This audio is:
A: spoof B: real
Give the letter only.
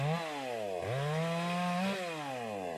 B